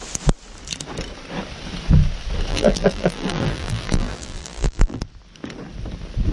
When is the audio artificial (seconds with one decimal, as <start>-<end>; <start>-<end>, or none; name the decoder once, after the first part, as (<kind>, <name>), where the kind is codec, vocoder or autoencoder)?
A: 2.5-5.0 (vocoder, BigVGAN v2)